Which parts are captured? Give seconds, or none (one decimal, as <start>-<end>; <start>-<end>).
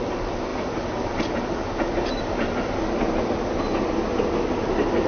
0.0-5.1